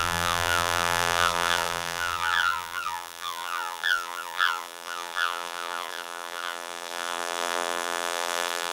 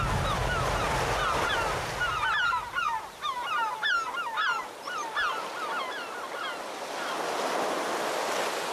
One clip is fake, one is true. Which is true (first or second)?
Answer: second